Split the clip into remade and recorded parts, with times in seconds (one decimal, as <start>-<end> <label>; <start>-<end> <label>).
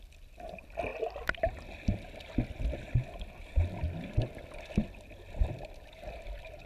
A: 0.0-6.7 recorded